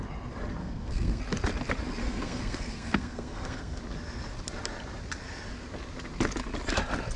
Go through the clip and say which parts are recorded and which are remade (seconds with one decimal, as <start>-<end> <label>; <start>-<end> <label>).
0.0-0.6 recorded; 0.6-1.2 remade; 1.2-2.0 recorded; 2.0-3.8 remade; 3.8-7.2 recorded